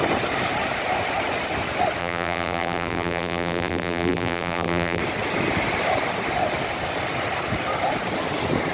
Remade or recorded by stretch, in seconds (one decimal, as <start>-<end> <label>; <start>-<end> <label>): 0.0-2.0 recorded; 2.0-5.0 remade; 5.0-8.7 recorded